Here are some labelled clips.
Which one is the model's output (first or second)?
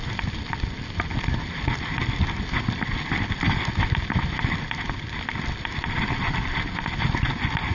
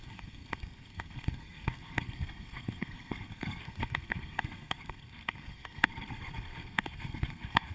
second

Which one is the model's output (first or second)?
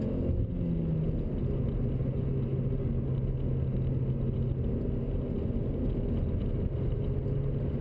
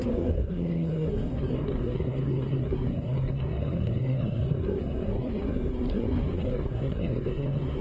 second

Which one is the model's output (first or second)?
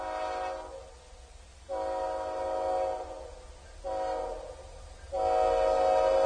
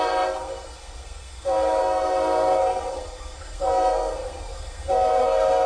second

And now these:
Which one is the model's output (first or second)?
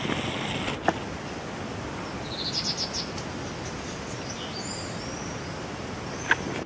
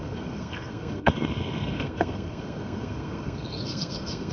second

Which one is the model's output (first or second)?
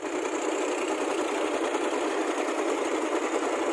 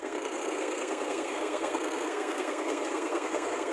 second